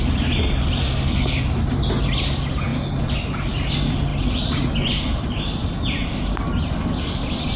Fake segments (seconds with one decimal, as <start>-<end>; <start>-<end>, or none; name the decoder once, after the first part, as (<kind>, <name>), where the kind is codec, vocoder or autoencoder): 0.8-1.4 (codec, SNAC)